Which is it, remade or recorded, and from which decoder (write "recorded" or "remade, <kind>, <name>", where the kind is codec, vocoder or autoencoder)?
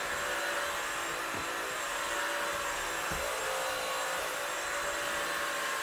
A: recorded